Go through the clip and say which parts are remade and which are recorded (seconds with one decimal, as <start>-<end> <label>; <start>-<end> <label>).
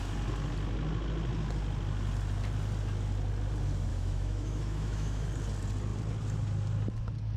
0.0-3.9 recorded; 3.9-5.3 remade; 5.3-7.4 recorded